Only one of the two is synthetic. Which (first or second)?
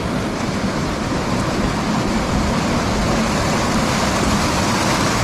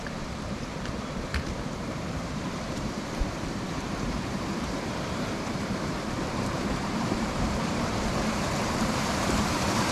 second